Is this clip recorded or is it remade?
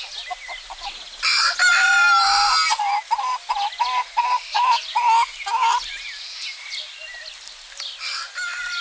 recorded